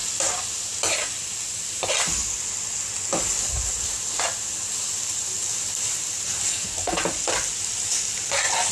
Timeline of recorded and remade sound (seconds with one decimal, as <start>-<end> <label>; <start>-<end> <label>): 0.0-6.5 recorded; 6.5-7.0 remade; 7.0-8.7 recorded

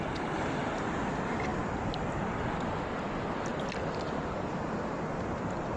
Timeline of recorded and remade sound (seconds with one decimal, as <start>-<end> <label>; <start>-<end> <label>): 0.0-5.8 recorded

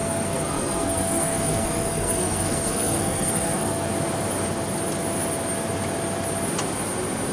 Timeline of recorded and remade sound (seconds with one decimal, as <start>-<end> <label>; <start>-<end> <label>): 0.0-3.9 remade; 3.9-7.3 recorded